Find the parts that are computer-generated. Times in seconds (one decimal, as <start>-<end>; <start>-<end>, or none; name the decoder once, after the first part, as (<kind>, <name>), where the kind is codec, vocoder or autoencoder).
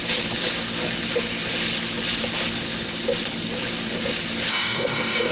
4.5-5.3 (codec, DAC)